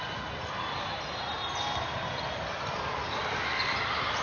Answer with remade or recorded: recorded